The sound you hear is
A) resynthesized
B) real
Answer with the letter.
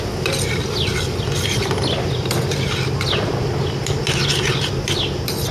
B